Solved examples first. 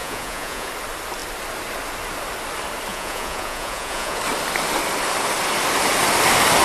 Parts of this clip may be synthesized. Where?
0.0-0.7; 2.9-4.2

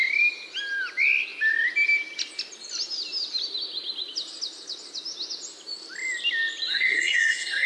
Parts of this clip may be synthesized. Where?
6.7-7.7

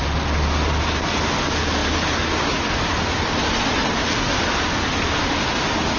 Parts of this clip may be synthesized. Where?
none

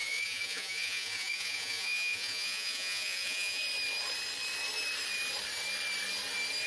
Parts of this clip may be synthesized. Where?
0.0-3.6